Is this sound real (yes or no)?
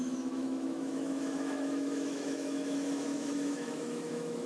no